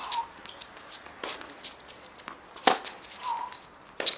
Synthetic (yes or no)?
no